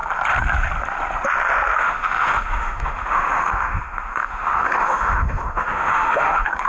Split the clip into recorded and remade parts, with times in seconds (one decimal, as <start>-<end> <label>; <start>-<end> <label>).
0.0-1.8 recorded; 1.8-6.7 remade